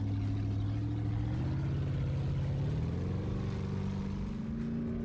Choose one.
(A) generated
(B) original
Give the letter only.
B